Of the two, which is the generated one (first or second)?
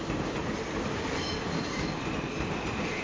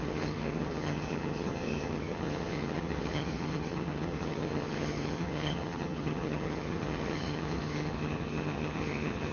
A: second